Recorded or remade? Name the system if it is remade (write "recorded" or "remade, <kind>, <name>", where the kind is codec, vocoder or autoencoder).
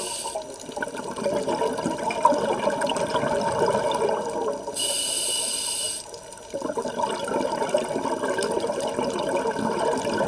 recorded